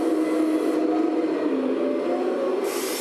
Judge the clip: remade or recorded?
recorded